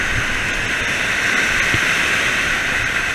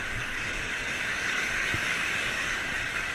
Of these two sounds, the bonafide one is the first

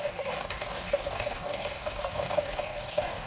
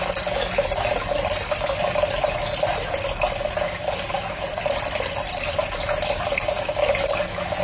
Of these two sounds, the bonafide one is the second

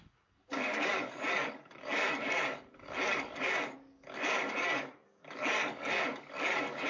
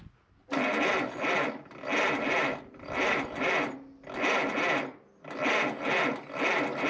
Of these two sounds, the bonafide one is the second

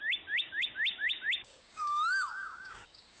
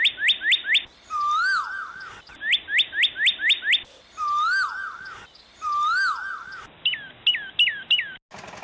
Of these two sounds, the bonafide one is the second